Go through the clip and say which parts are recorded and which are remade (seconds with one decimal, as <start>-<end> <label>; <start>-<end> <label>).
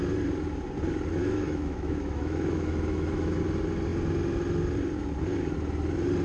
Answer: 0.0-1.2 recorded; 1.2-3.4 remade; 3.4-6.2 recorded